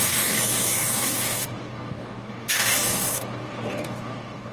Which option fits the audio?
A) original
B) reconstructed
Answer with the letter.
B